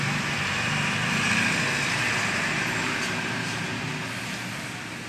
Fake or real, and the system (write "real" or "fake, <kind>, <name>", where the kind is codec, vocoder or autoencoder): real